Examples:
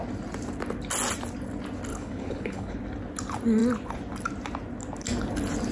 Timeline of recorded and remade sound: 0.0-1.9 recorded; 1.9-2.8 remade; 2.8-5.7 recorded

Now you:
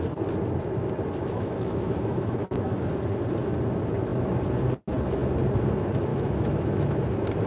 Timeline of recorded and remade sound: 0.0-1.2 recorded; 1.2-2.7 remade; 2.7-6.1 recorded; 6.1-7.0 remade; 7.0-7.5 recorded

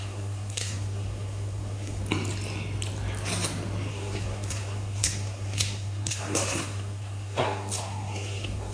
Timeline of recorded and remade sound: 0.0-2.0 remade; 2.0-3.9 recorded; 3.9-8.7 remade

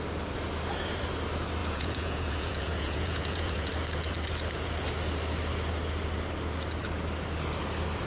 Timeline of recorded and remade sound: 0.0-1.6 recorded; 1.6-3.7 remade; 3.7-8.1 recorded